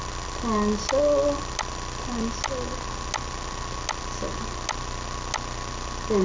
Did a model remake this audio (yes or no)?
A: no